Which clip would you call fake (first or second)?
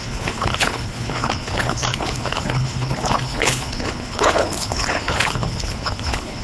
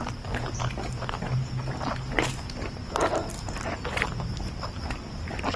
first